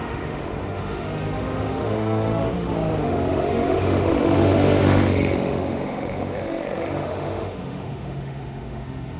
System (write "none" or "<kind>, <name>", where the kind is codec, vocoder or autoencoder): autoencoder, DAC-VAE